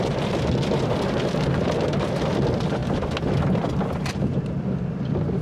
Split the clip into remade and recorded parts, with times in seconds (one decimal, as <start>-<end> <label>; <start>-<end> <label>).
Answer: 0.0-5.4 recorded